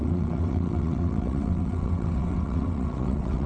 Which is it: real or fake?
fake